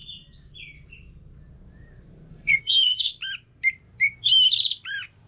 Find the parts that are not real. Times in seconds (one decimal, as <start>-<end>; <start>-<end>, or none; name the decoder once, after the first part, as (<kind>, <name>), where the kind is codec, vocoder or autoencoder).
2.3-3.1 (codec, SNAC)